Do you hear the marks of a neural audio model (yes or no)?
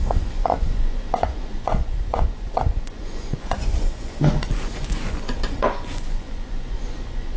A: yes